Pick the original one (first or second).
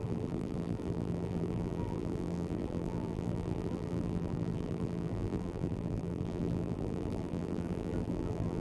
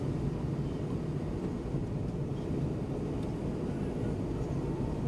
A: second